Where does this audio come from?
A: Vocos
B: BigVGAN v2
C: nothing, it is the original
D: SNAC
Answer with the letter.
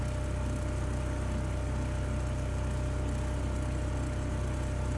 C